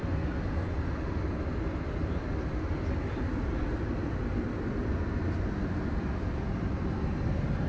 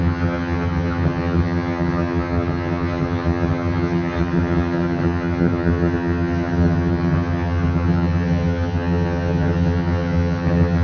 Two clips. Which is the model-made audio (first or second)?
second